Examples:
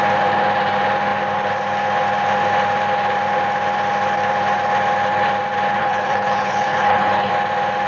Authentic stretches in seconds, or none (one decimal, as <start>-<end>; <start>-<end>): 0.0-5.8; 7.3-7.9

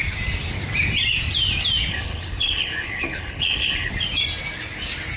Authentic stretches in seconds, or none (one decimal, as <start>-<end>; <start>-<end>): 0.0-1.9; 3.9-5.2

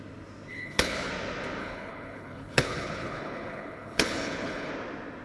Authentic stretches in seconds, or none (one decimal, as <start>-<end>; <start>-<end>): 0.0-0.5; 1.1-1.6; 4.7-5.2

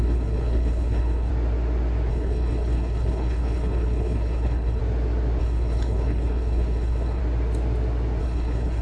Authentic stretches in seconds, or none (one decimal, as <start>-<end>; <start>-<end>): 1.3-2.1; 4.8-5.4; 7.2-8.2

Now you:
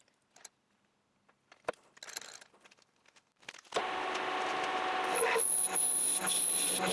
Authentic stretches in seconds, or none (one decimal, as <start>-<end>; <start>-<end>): 0.0-6.9

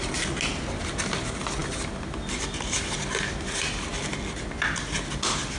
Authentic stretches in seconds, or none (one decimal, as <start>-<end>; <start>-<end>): 0.0-5.6

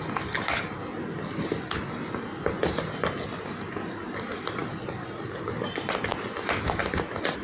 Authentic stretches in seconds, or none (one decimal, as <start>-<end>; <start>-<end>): 0.0-7.4